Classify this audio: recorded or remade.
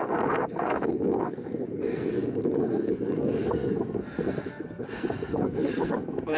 remade